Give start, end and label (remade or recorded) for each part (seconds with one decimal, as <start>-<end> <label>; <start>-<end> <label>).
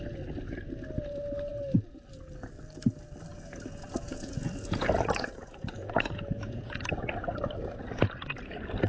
0.0-3.3 recorded; 3.3-6.8 remade; 6.8-8.9 recorded